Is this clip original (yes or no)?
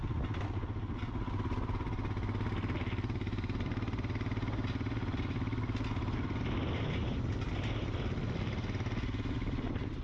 yes